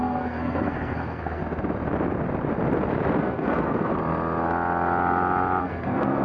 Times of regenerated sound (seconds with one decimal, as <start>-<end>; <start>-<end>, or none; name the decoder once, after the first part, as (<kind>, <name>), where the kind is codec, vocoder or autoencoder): 0.0-1.4 (codec, SNAC); 3.2-3.9; 5.6-6.2